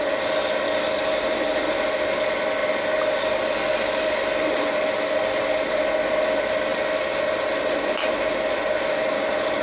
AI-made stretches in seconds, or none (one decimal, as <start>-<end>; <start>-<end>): none